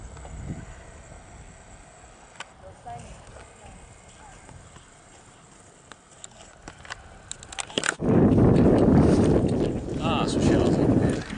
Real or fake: real